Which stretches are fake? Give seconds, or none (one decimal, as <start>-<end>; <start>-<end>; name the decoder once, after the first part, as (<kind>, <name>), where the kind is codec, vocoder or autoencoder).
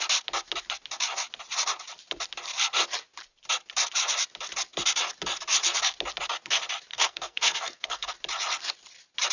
6.9-8.1 (codec, SNAC)